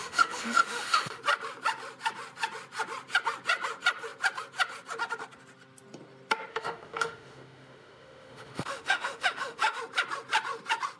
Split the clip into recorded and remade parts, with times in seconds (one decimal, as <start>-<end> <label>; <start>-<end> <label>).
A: 0.0-1.2 remade; 1.2-6.5 recorded; 6.5-9.8 remade; 9.8-11.0 recorded